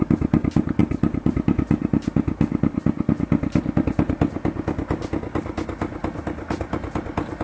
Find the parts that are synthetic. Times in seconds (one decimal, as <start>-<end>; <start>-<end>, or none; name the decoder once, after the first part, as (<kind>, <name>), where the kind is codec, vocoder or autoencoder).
none

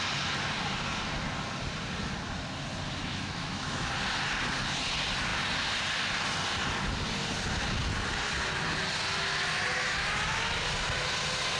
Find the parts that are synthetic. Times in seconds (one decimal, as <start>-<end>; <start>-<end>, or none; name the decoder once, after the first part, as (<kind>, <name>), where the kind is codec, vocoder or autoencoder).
3.1-3.9 (autoencoder, DAC-VAE)

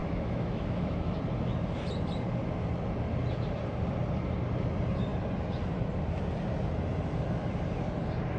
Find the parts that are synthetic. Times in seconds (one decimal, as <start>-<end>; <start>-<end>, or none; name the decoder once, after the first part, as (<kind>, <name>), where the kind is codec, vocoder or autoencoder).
0.0-1.2 (autoencoder, DAC-VAE)

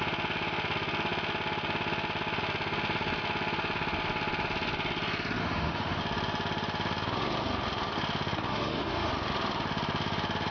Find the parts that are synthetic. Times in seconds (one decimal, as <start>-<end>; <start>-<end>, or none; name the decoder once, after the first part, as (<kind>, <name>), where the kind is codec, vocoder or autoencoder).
5.4-6.0 (autoencoder, DAC-VAE); 8.5-9.1

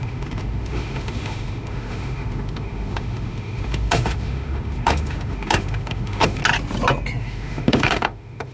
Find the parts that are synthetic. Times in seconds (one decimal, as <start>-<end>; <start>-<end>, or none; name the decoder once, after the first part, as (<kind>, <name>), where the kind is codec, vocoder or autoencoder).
0.0-6.4 (autoencoder, DAC-VAE); 7.2-8.5